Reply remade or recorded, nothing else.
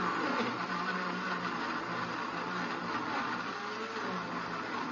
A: recorded